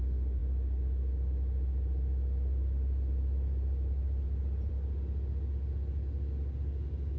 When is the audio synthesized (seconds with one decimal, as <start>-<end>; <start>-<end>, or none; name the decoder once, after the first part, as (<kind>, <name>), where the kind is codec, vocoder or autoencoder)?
none